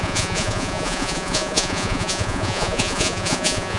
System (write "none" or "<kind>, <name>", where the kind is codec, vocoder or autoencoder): vocoder, Vocos